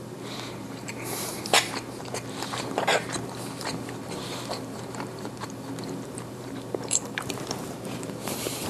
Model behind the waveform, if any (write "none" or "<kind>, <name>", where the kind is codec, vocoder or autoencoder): vocoder, BigVGAN v2